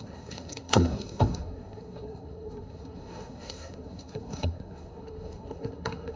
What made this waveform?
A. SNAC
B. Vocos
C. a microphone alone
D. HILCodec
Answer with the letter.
A